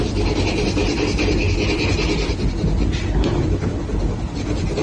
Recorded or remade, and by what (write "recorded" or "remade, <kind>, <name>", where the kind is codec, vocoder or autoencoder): recorded